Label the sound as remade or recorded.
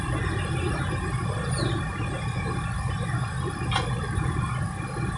recorded